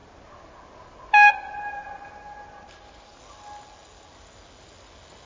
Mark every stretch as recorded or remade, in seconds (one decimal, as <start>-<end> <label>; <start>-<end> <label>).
0.0-5.3 recorded